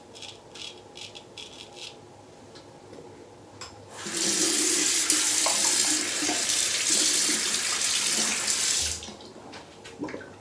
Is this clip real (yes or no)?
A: yes